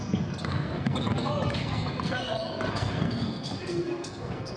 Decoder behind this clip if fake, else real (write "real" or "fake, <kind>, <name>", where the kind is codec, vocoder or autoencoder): fake, codec, SNAC